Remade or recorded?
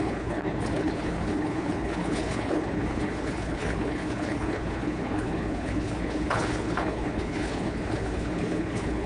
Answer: remade